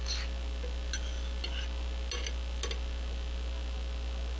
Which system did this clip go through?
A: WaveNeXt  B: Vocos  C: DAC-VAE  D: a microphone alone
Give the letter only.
D